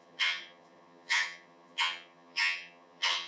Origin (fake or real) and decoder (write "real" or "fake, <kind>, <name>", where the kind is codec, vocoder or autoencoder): fake, vocoder, HiFi-GAN